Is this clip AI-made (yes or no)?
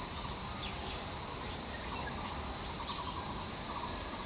no